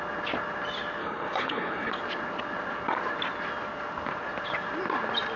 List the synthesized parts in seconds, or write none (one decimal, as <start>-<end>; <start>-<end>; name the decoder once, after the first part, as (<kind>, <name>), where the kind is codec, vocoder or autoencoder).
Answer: 1.0-1.9 (codec, HILCodec)